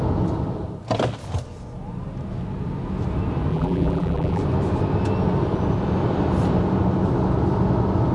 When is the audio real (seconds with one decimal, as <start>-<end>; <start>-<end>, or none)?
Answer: 0.0-3.5; 4.4-8.1